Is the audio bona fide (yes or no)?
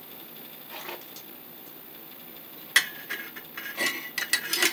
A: yes